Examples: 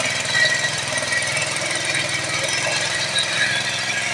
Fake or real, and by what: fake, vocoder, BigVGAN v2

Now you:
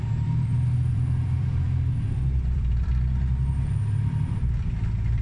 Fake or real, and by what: fake, vocoder, BigVGAN v2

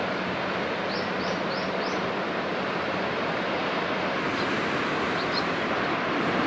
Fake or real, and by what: fake, vocoder, BigVGAN v2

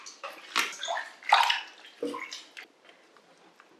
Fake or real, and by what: real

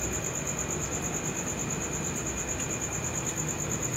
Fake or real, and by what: real